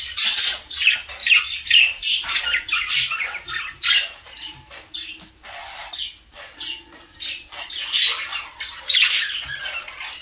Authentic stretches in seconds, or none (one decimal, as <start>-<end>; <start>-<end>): 0.0-1.2; 5.3-10.2